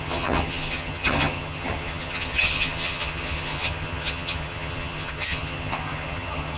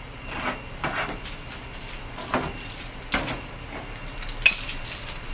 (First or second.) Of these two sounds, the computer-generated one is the first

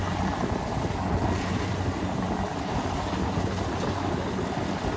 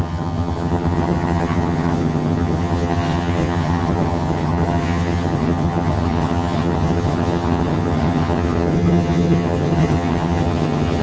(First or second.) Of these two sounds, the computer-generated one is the second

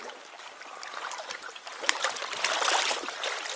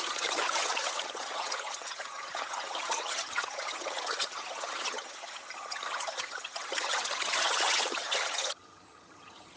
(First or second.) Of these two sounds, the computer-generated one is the second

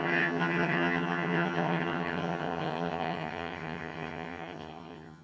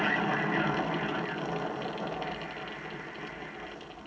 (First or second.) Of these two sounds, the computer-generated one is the first